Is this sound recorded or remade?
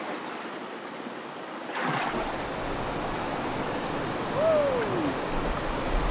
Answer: recorded